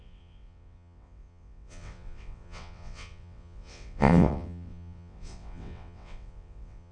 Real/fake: fake